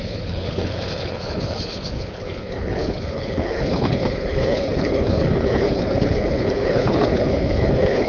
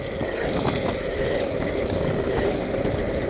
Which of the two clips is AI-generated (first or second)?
first